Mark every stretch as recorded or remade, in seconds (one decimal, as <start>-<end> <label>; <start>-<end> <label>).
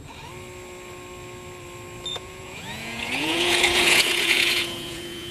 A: 0.0-2.1 recorded; 2.1-5.3 remade